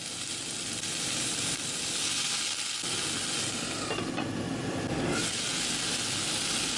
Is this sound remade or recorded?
recorded